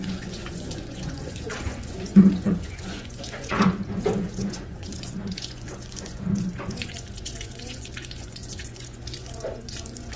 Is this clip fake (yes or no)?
yes